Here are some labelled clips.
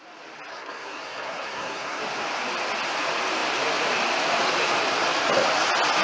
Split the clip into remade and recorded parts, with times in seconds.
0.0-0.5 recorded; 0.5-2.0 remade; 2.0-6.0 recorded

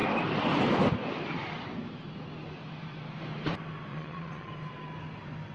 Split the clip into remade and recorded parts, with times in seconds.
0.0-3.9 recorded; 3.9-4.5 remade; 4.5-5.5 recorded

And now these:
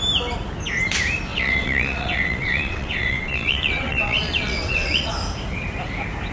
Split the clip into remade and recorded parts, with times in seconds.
0.0-1.3 recorded; 1.3-5.1 remade; 5.1-6.3 recorded

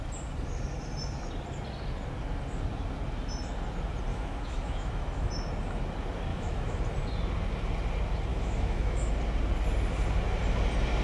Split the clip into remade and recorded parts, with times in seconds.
0.0-4.1 recorded; 4.1-5.3 remade; 5.3-6.3 recorded; 6.3-6.8 remade; 6.8-8.3 recorded; 8.3-9.1 remade; 9.1-11.0 recorded

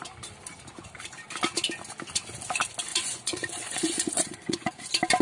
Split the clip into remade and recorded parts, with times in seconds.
0.0-2.9 recorded; 2.9-4.7 remade; 4.7-5.2 recorded

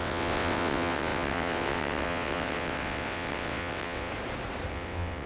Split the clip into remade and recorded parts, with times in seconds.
0.0-4.1 remade; 4.1-4.7 recorded; 4.7-5.3 remade

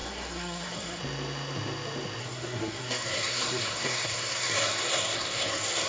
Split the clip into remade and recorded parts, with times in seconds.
0.0-1.0 remade; 1.0-2.2 recorded; 2.2-5.9 remade

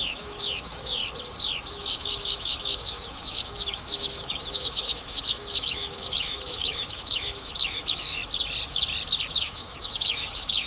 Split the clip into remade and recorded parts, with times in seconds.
0.0-1.0 remade; 1.0-1.7 recorded; 1.7-8.2 remade; 8.2-9.4 recorded; 9.4-10.7 remade